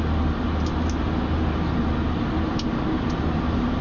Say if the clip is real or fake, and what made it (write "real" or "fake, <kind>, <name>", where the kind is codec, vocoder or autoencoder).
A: real